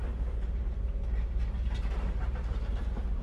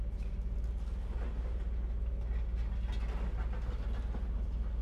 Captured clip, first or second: second